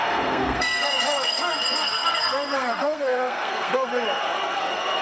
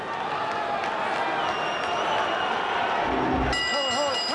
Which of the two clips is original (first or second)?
second